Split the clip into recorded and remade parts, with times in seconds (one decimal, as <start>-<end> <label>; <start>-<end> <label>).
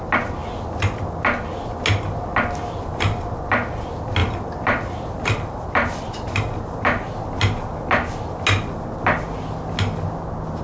0.0-4.2 recorded; 4.2-7.1 remade; 7.1-10.6 recorded